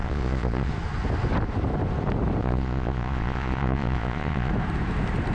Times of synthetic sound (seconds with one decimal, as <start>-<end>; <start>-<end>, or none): 0.0-0.7; 2.4-4.5

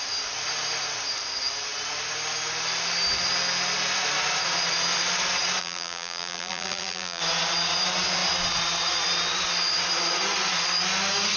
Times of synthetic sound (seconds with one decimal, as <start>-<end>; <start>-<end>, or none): 5.6-7.2

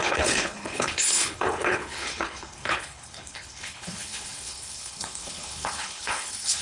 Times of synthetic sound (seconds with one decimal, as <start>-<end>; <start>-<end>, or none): 0.0-6.6